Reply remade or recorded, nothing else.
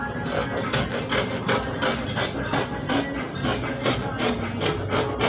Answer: recorded